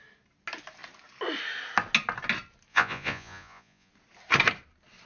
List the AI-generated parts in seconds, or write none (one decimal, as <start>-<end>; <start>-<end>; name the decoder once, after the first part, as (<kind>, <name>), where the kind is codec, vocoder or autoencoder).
2.7-3.9 (vocoder, Vocos)